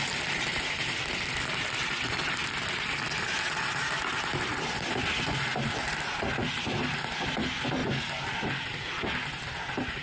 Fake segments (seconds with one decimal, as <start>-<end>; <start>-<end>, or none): none